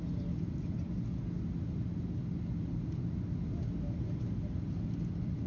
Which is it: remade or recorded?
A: recorded